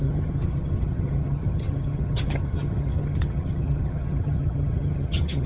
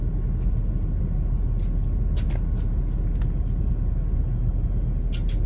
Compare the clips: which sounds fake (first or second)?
first